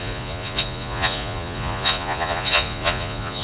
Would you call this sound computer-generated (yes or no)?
yes